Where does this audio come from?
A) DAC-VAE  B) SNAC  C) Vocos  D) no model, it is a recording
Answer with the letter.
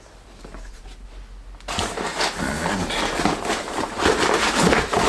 D